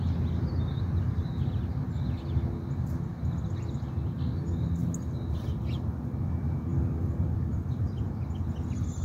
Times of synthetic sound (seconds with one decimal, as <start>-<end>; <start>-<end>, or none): 6.7-7.8